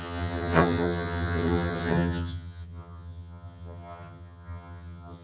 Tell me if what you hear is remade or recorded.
remade